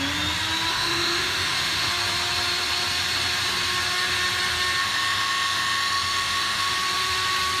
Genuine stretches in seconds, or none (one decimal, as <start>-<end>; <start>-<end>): 0.0-0.7; 1.9-4.8; 6.7-7.6